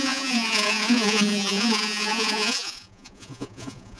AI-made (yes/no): yes